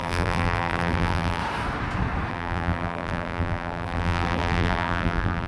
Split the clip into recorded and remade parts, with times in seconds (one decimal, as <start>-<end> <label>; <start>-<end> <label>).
0.0-1.4 remade; 1.4-2.3 recorded; 2.3-5.5 remade

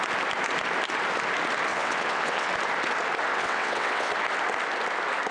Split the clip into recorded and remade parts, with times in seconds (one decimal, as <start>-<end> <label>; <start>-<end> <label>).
0.0-1.7 recorded; 1.7-2.5 remade; 2.5-3.3 recorded; 3.3-4.1 remade; 4.1-5.3 recorded

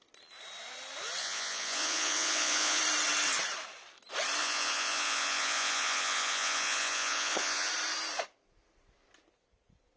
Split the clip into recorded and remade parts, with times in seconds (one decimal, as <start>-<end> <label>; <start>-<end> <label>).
0.0-1.2 recorded; 1.2-2.8 remade; 2.8-4.4 recorded; 4.4-7.7 remade; 7.7-10.0 recorded

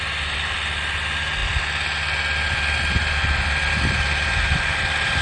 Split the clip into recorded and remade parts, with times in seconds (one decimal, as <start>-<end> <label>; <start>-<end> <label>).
0.0-5.2 recorded